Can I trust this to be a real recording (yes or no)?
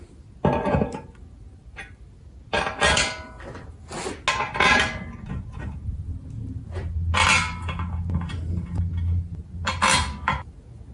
yes